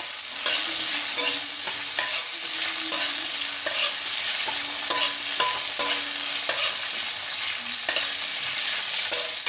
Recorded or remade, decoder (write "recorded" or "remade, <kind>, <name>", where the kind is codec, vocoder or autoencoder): remade, vocoder, BigVGAN v2